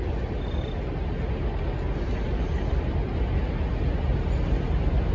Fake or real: real